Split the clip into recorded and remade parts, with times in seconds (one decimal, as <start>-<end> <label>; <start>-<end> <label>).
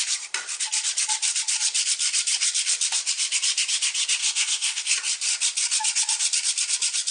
0.0-4.2 recorded; 4.2-4.9 remade; 4.9-7.1 recorded